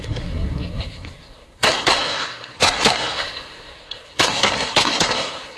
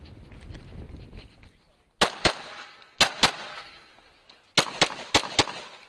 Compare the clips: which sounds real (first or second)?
second